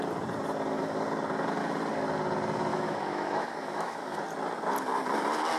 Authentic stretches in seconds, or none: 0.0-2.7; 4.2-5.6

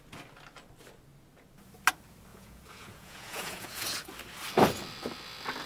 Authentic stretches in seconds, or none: 0.0-2.3; 4.1-5.7

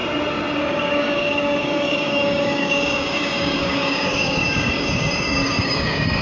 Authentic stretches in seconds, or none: 0.0-0.6

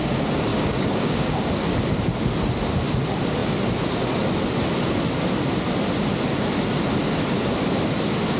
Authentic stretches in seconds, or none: 0.0-0.5; 1.5-8.4

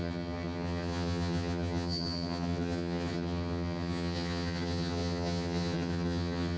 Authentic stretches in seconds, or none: none

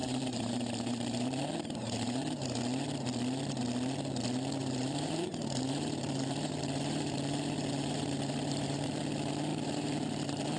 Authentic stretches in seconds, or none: 2.6-4.6; 9.0-9.5

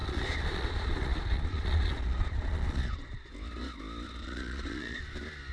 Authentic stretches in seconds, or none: 3.3-4.2; 5.0-5.5

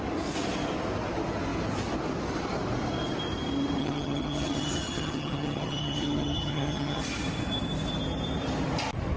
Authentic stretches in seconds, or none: 0.0-3.8; 7.0-9.2